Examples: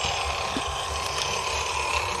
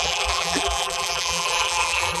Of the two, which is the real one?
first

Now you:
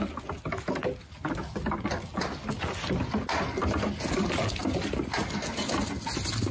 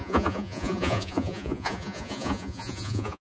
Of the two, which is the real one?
first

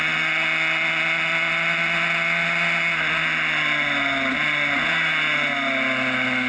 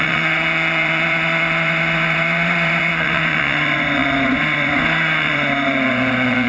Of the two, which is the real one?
first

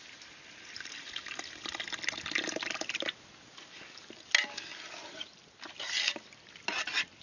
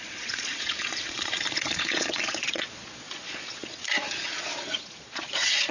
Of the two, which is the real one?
first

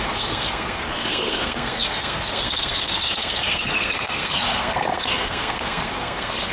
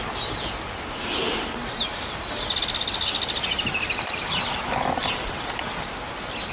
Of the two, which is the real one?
second